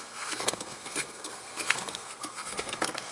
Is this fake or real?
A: fake